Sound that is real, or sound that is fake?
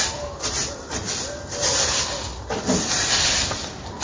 real